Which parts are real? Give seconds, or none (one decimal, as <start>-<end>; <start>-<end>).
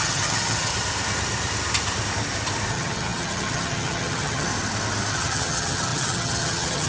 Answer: 0.7-2.7; 4.5-5.1